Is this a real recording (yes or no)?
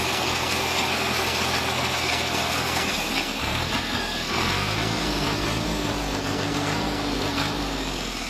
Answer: no